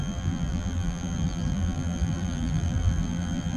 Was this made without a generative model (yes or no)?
no